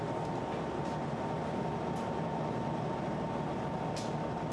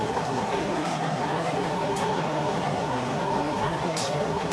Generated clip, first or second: second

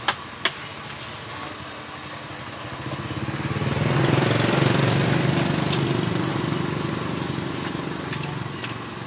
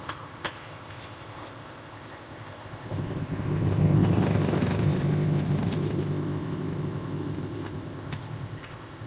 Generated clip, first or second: second